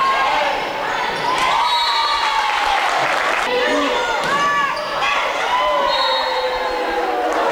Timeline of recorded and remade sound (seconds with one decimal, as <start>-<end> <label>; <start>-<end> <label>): 0.0-1.6 remade; 1.6-7.5 recorded